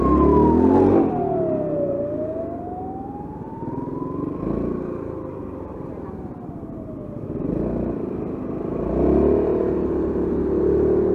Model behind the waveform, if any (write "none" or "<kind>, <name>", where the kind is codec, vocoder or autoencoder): none